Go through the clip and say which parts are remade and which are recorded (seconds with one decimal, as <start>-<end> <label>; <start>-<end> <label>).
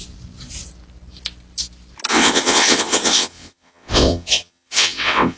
0.0-2.1 recorded; 2.1-5.4 remade